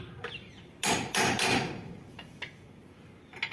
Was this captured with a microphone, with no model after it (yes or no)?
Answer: yes